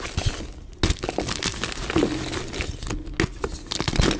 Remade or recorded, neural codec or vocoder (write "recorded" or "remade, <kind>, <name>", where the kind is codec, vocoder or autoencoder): recorded